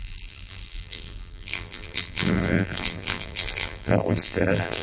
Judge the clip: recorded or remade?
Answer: remade